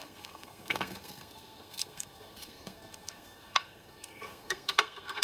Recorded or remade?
remade